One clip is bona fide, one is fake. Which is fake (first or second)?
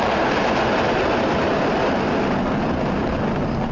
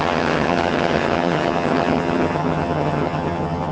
second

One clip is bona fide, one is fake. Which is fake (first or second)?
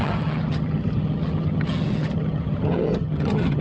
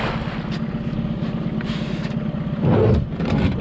first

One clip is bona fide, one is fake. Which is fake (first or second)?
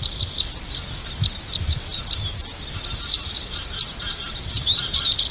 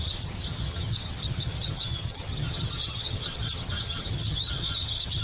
second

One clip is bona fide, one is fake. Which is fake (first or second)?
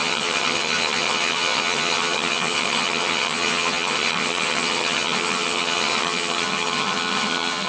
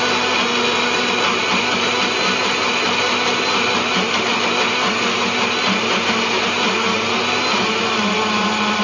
first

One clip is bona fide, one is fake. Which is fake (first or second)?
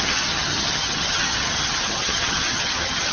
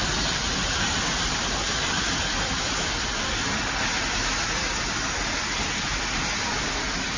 first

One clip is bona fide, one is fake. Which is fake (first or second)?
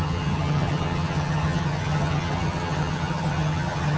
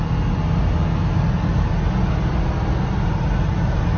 first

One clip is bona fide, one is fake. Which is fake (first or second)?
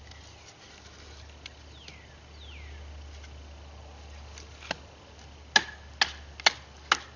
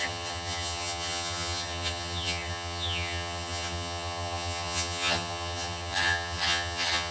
second